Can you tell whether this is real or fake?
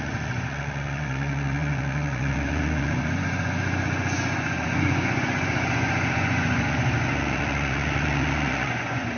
fake